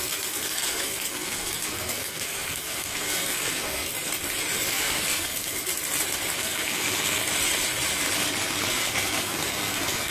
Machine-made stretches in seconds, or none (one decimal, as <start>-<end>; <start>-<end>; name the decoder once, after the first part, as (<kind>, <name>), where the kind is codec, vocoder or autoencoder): 0.0-3.9 (codec, SNAC); 4.7-5.7; 6.4-7.2; 8.7-10.1